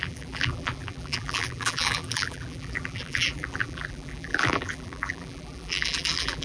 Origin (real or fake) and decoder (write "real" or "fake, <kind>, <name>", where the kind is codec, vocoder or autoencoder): fake, vocoder, BigVGAN v2